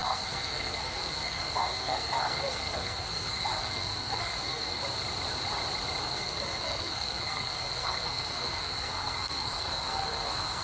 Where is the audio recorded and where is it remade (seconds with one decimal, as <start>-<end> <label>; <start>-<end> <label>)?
0.0-4.8 remade; 4.8-6.0 recorded; 6.0-10.6 remade